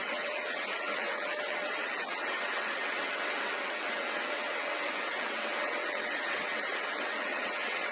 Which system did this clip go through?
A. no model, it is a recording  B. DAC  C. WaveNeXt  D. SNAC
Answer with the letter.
C